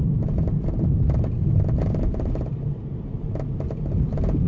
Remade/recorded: remade